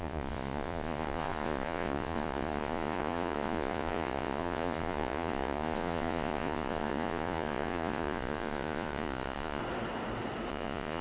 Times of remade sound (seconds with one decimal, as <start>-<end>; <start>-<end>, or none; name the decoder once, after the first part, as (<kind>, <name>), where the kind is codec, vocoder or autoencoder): 0.0-9.6 (vocoder, Vocos); 10.5-11.0

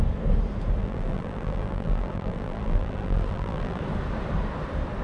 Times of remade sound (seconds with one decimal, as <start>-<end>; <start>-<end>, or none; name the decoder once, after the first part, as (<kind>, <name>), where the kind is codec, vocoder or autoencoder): 0.8-3.8 (vocoder, BigVGAN v2)

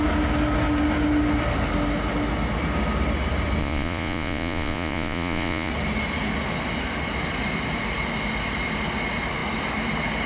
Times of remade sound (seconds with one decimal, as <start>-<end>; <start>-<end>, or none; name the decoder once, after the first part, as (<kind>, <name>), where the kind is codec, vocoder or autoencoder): 3.6-5.7 (vocoder, Vocos)

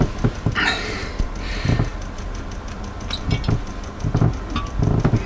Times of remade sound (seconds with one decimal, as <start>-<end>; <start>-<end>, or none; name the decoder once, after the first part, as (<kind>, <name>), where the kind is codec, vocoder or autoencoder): none

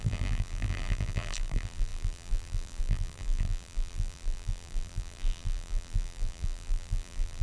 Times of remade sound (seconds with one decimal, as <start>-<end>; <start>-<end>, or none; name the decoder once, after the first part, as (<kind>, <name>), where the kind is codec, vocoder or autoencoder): 0.0-7.4 (vocoder, BigVGAN v2)

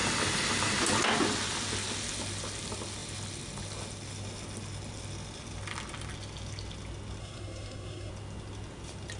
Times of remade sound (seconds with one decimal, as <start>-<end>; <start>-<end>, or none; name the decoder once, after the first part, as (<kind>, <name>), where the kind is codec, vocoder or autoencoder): 7.2-8.1 (codec, SNAC)